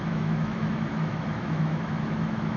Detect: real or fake fake